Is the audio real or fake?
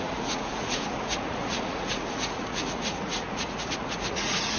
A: fake